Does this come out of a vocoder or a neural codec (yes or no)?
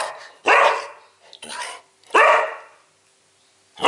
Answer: no